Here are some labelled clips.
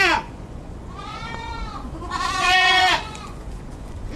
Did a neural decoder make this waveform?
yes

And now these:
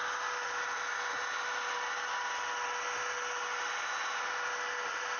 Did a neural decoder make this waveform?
no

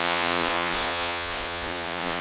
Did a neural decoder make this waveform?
yes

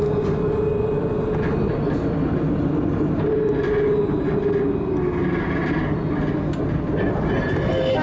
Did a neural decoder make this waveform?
no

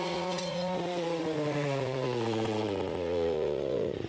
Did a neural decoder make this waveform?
yes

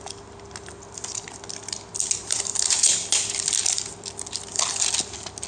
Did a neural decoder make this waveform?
no